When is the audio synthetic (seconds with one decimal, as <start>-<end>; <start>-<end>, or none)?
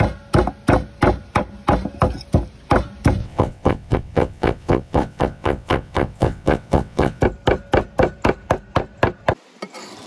3.2-7.2